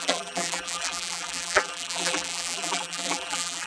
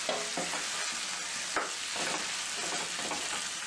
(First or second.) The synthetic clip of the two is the first